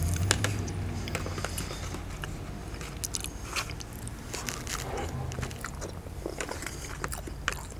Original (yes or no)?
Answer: yes